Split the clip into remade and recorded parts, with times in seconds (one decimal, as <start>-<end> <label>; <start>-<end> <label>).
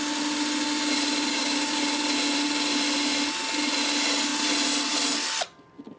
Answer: 0.0-1.3 recorded; 1.3-1.8 remade; 1.8-6.0 recorded